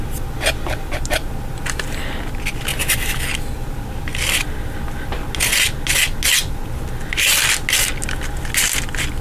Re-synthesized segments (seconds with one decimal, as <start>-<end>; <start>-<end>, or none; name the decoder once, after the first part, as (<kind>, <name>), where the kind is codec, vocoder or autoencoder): none